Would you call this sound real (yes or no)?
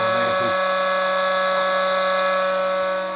yes